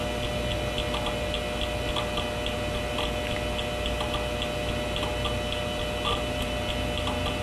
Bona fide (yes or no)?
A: yes